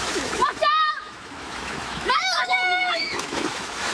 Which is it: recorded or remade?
remade